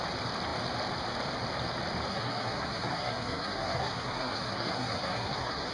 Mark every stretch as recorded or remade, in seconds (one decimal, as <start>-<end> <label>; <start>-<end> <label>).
0.0-2.1 recorded; 2.1-5.7 remade